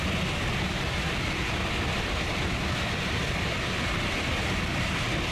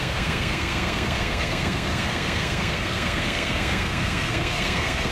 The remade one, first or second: second